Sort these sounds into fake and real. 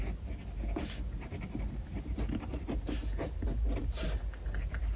real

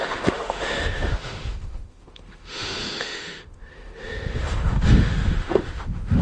fake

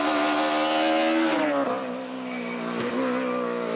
real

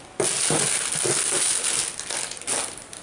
real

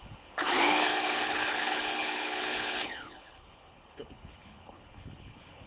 fake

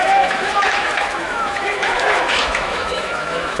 fake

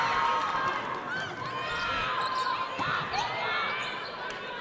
real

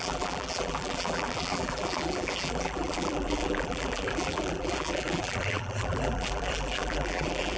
fake